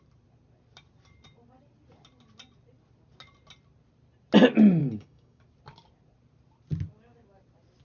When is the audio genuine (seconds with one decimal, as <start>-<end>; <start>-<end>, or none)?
0.0-4.8; 5.4-7.8

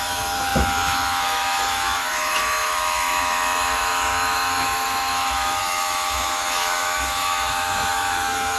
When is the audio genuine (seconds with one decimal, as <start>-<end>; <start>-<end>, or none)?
none

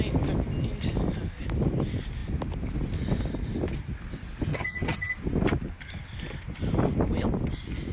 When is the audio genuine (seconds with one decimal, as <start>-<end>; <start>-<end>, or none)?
0.0-4.5; 5.1-7.9

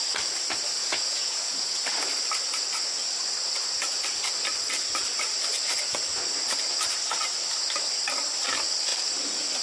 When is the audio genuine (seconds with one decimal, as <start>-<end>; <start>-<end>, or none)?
0.0-0.8; 1.8-9.6